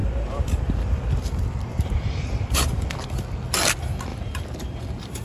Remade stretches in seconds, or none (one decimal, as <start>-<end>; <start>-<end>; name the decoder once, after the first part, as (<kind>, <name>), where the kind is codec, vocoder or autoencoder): 0.0-1.0 (vocoder, BigVGAN v2); 1.7-2.8; 4.1-5.2